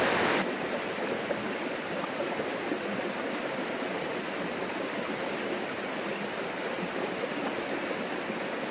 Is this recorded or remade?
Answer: recorded